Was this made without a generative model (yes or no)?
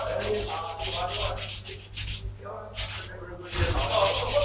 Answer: yes